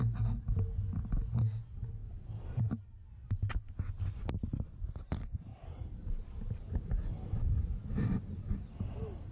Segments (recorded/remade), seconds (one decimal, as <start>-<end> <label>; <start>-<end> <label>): 0.0-9.3 recorded